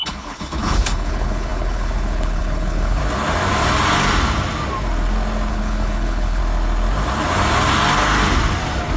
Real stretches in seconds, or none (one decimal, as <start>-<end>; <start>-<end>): 3.0-5.5; 6.4-9.0